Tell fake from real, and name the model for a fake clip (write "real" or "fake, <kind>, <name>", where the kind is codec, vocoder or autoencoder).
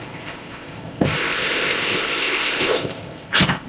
fake, codec, ZipCodec